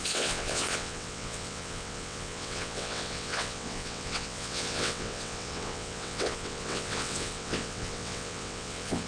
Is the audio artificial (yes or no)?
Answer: yes